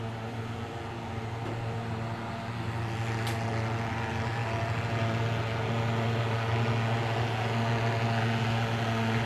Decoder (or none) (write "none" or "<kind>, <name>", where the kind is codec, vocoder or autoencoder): none